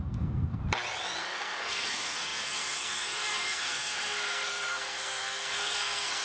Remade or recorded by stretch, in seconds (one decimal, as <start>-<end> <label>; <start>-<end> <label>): 0.0-0.6 remade; 0.6-1.2 recorded; 1.2-6.2 remade